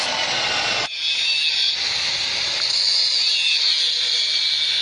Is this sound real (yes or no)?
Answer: yes